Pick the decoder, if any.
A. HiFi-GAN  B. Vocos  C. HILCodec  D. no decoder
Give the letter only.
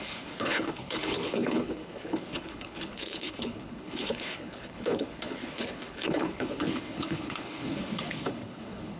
C